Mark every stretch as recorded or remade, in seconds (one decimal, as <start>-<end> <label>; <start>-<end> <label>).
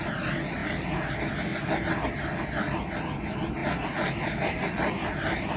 0.0-0.6 recorded; 0.6-1.1 remade; 1.1-3.6 recorded; 3.6-5.6 remade